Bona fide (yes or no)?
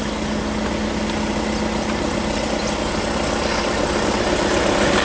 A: yes